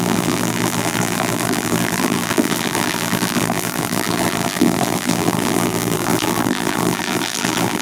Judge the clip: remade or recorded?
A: remade